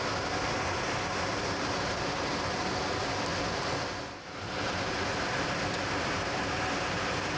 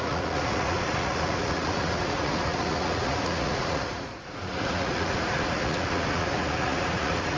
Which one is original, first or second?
first